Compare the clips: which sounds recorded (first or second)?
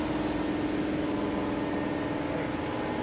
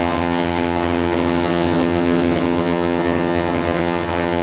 first